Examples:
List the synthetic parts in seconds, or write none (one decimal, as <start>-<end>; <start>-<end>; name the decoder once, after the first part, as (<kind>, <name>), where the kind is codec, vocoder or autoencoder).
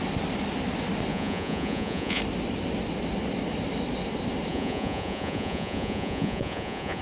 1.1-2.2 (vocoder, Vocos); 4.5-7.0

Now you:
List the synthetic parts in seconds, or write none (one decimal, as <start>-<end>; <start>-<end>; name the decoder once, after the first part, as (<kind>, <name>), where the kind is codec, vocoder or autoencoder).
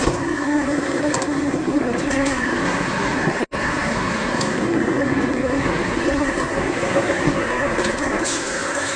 0.0-9.0 (codec, SNAC)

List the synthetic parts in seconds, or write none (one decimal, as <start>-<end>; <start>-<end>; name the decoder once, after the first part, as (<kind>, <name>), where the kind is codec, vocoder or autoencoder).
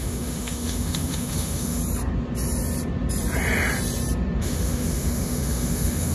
0.0-1.8 (autoencoder, DAC-VAE); 4.4-6.1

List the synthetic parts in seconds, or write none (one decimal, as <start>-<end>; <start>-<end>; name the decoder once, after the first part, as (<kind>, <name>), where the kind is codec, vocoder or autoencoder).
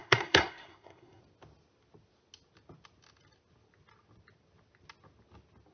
0.0-1.2 (codec, SNAC)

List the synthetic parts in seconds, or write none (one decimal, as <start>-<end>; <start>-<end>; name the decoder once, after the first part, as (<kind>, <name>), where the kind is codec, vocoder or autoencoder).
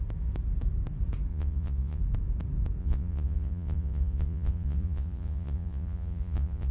1.3-2.0 (vocoder, Vocos); 2.8-6.7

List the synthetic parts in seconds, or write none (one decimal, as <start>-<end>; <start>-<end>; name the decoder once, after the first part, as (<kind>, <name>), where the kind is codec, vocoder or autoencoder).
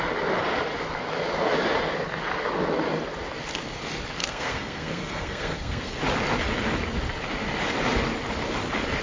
4.2-6.0 (codec, SNAC)